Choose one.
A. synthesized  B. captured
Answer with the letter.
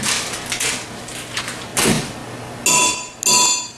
B